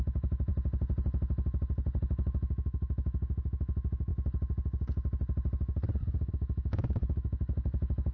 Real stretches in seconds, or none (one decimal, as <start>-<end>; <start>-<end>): 0.5-2.0; 4.1-6.3